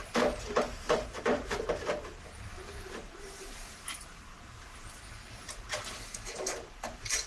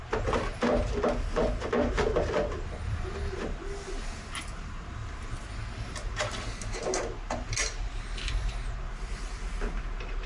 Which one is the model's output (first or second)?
first